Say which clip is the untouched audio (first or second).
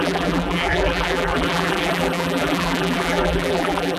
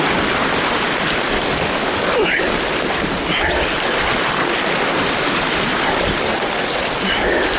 second